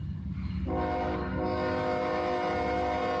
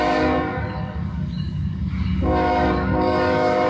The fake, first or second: second